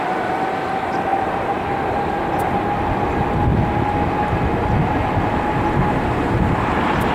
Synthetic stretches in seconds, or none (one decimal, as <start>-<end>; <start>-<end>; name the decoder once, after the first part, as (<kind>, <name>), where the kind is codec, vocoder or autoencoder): 6.2-7.1 (vocoder, BigVGAN v2)